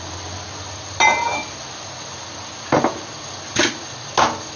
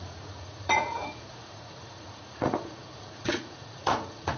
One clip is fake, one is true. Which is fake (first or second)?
second